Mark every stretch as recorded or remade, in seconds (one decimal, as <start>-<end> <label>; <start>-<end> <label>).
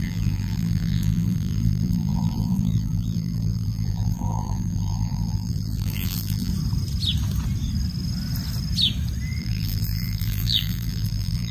0.0-6.5 remade; 6.5-9.4 recorded; 9.4-11.5 remade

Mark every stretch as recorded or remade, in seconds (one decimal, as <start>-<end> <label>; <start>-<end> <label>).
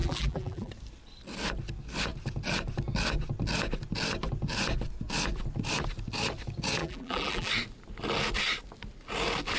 0.0-0.7 remade; 0.7-6.8 recorded; 6.8-7.5 remade; 7.5-9.6 recorded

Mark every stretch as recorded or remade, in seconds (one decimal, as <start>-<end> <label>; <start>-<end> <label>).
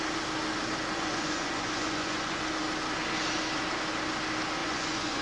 0.0-0.9 recorded; 0.9-2.4 remade; 2.4-4.6 recorded; 4.6-5.2 remade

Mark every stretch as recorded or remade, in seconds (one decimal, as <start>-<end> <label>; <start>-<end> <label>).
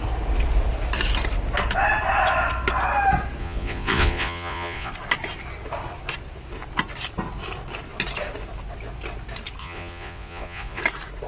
0.0-3.4 recorded; 3.4-4.9 remade; 4.9-9.6 recorded; 9.6-10.8 remade; 10.8-11.3 recorded